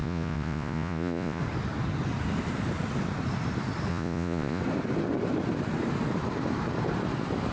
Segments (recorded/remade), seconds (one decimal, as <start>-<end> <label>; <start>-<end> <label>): 0.0-1.4 remade; 1.4-3.9 recorded; 3.9-4.6 remade; 4.6-7.5 recorded